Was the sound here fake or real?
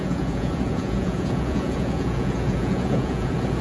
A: fake